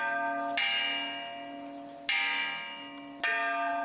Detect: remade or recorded recorded